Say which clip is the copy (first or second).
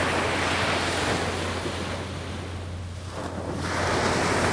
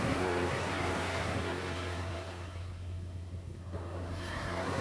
second